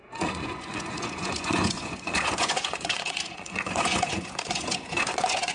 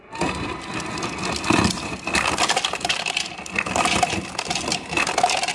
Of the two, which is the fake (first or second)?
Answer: first